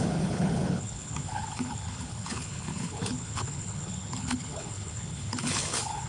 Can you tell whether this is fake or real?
fake